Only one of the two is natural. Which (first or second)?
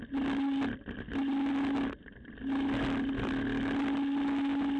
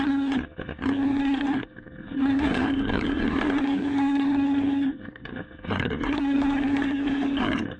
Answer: first